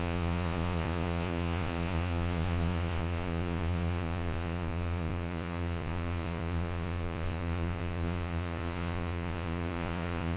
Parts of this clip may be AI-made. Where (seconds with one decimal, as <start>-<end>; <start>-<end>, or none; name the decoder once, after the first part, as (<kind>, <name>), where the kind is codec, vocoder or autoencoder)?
0.0-10.4 (vocoder, Vocos)